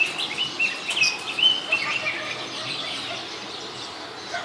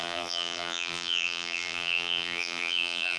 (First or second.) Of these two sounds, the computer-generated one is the second